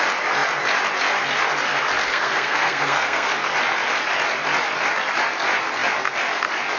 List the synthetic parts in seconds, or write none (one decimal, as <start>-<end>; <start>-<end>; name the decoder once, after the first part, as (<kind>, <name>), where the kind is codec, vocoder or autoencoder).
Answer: 2.1-3.3 (codec, SNAC)